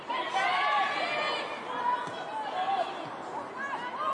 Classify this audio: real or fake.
real